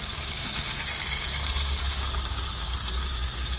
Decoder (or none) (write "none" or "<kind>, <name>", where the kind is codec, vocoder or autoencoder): codec, DAC